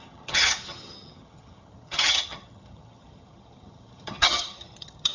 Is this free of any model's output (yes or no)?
no